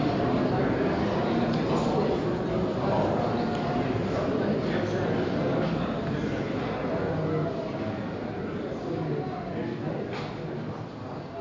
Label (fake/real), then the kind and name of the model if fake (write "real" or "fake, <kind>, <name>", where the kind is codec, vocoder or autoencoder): real